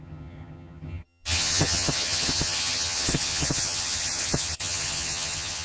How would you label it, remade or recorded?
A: remade